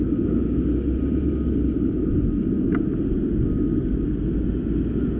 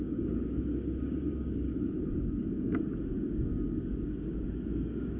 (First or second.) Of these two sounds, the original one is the first